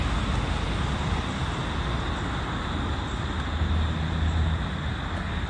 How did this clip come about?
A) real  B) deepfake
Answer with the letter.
A